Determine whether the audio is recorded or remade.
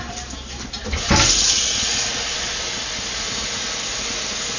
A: recorded